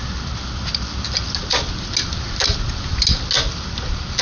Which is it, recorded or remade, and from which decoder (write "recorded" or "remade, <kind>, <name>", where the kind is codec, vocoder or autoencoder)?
recorded